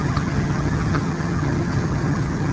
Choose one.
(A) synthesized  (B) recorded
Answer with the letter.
A